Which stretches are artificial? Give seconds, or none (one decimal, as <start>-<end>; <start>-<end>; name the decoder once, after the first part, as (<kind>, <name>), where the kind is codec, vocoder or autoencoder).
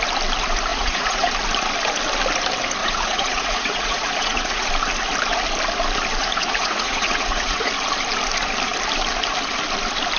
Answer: 0.7-1.3 (vocoder, Vocos); 2.8-4.7; 6.2-7.7